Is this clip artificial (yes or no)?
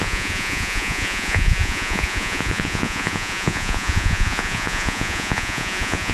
yes